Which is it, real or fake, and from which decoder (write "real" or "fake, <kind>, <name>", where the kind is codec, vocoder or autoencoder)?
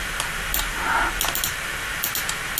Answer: real